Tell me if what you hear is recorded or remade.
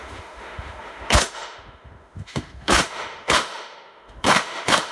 remade